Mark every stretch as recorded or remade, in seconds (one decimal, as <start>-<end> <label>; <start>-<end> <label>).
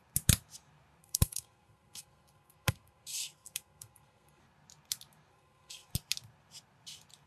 0.0-1.0 recorded; 1.0-4.4 remade; 4.4-5.3 recorded; 5.3-5.9 remade; 5.9-7.3 recorded